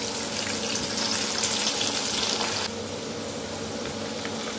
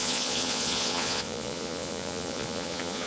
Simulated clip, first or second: second